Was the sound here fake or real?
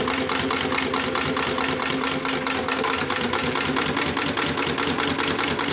real